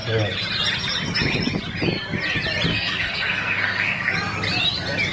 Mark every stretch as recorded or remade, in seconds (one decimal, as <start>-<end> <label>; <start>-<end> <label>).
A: 0.0-2.7 recorded; 2.7-4.1 remade; 4.1-5.1 recorded